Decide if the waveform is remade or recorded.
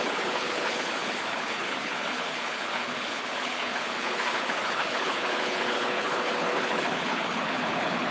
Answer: remade